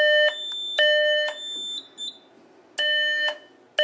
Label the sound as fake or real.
real